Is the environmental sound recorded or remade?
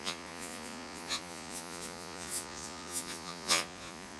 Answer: remade